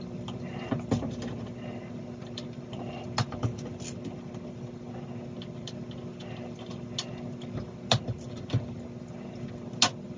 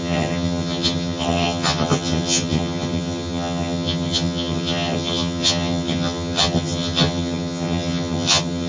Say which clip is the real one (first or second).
first